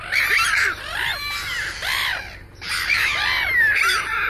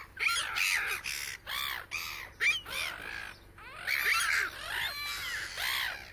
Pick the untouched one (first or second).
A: second